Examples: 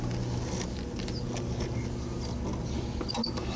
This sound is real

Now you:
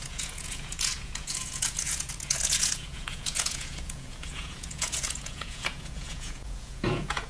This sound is fake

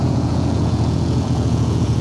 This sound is fake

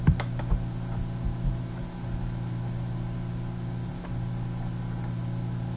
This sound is real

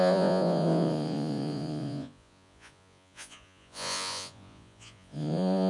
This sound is fake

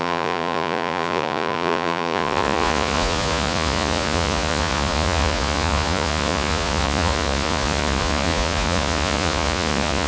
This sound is fake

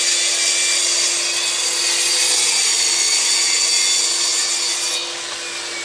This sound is real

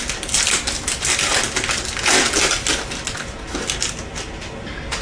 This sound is real